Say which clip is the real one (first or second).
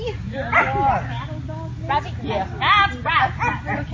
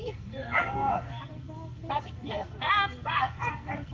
first